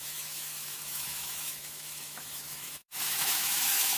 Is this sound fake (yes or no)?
yes